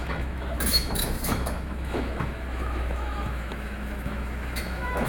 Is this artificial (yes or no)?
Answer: yes